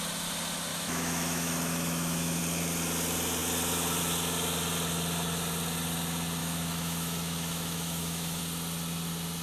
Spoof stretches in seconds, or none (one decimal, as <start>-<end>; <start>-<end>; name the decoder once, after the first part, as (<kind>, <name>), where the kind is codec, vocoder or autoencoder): 0.7-2.4 (autoencoder, DAC-VAE); 6.4-8.4